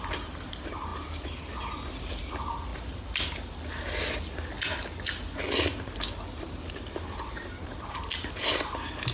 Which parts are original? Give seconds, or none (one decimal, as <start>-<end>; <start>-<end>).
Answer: 0.0-9.1